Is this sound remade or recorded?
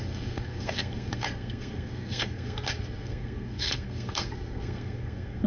remade